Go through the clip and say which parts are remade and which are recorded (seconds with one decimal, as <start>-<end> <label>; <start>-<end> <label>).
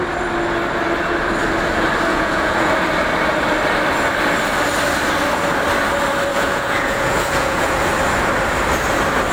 0.0-2.1 recorded; 2.1-2.7 remade; 2.7-6.3 recorded; 6.3-7.9 remade; 7.9-9.3 recorded